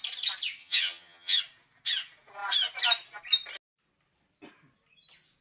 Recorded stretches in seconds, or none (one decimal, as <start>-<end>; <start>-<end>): 0.0-0.6; 1.4-5.4